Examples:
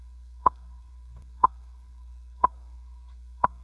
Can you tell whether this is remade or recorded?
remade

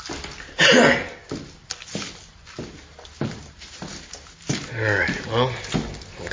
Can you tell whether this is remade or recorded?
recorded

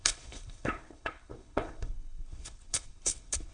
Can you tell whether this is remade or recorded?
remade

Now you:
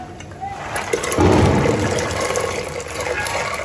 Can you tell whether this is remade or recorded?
recorded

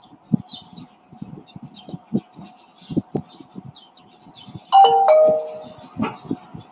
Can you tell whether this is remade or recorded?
recorded